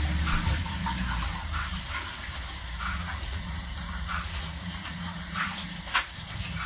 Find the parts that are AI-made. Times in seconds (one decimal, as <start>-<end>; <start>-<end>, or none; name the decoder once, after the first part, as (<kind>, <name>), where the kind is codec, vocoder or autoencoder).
2.9-6.0 (vocoder, Vocos)

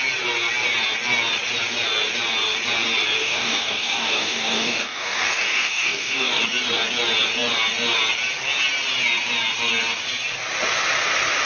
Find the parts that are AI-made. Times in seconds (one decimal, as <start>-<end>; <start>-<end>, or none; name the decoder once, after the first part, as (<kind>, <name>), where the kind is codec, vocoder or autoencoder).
3.2-6.4 (codec, DAC)

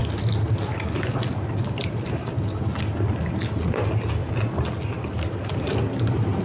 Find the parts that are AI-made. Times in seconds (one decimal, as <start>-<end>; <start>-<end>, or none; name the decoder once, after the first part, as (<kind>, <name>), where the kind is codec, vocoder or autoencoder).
none